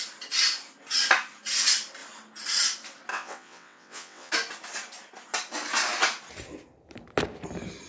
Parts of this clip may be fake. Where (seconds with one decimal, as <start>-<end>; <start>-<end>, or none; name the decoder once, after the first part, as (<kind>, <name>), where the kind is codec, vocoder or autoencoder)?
3.1-4.3 (vocoder, WaveNeXt)

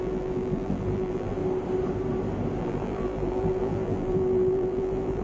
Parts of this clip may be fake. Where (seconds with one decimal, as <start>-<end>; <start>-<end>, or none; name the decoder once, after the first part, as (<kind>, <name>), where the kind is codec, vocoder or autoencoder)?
0.0-1.4 (vocoder, BigVGAN v2); 2.6-5.2

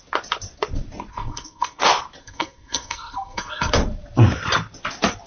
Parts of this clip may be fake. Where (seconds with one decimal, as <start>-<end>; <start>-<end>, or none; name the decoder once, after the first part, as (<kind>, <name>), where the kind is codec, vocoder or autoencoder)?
1.1-1.8 (codec, SNAC); 2.2-3.7

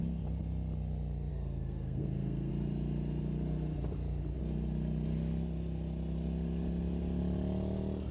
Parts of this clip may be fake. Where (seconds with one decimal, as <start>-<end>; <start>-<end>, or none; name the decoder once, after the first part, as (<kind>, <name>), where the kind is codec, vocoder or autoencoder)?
1.3-2.5 (codec, SNAC)

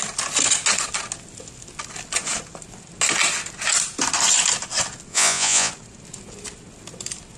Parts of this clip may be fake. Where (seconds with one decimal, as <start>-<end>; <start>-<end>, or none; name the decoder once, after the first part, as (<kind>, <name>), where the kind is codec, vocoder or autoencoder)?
5.1-5.7 (vocoder, Vocos)